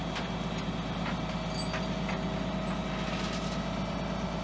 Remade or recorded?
recorded